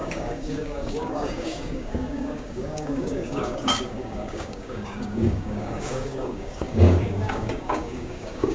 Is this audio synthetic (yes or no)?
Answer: yes